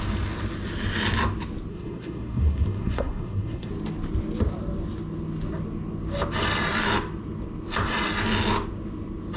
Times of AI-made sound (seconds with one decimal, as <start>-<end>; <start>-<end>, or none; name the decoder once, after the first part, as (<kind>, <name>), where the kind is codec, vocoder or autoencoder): 1.7-3.7 (codec, SNAC)